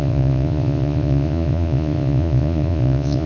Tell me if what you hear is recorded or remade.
remade